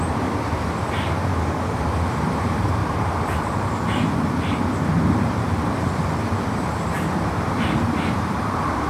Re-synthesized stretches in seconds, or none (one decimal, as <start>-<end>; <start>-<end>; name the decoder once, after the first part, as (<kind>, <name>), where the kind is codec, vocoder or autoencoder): 0.0-1.3 (vocoder, BigVGAN v2); 2.3-6.3

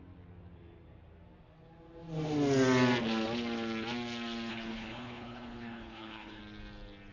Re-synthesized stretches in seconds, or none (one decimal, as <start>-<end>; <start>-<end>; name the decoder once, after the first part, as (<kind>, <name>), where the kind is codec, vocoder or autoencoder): 4.5-6.4 (codec, HILCodec)

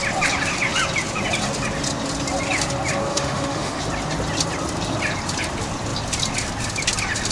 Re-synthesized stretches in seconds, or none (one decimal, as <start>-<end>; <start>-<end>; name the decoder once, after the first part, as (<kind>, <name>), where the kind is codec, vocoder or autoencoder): 3.1-3.8 (autoencoder, DAC-VAE)

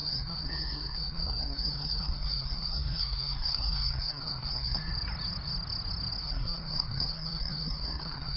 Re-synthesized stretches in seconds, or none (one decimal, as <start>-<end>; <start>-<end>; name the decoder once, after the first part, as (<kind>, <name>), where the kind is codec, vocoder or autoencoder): 0.0-4.9 (codec, SNAC); 6.2-8.4

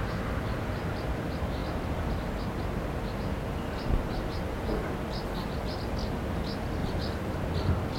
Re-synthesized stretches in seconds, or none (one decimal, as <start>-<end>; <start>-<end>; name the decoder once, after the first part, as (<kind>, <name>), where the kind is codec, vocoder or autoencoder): none

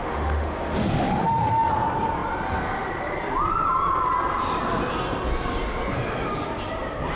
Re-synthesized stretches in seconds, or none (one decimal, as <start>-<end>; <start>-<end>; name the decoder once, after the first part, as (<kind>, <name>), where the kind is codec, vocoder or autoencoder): 0.0-1.7 (autoencoder, DAC-VAE)

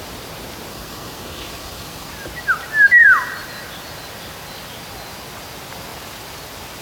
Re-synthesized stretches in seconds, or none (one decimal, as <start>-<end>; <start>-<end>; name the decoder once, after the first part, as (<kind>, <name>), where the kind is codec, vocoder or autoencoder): 0.7-2.1 (codec, SNAC)

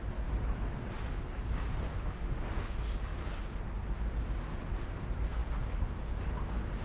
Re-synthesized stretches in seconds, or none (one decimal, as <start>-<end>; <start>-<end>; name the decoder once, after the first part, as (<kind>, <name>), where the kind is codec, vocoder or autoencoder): 1.9-2.7 (autoencoder, DAC-VAE)